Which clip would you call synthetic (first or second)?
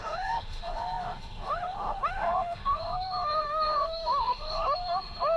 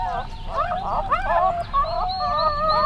first